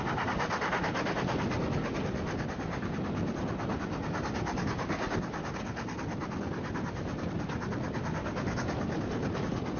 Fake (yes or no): no